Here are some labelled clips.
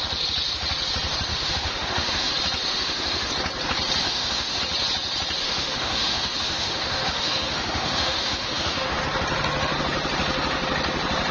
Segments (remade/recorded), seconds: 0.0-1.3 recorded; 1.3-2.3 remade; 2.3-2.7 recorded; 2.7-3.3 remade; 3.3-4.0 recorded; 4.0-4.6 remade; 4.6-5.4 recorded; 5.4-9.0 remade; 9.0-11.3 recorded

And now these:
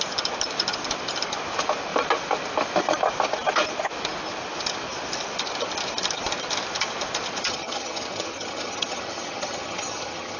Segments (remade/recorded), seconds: 0.0-7.5 recorded; 7.5-10.4 remade